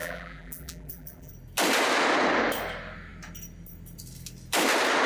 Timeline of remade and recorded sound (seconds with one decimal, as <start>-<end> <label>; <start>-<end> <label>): 0.0-1.3 remade; 1.3-5.1 recorded